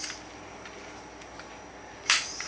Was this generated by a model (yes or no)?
no